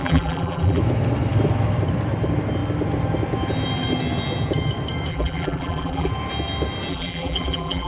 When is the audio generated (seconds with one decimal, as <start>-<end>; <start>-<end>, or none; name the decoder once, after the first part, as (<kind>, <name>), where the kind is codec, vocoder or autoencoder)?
0.0-0.8 (vocoder, BigVGAN v2); 5.1-6.1; 6.9-7.9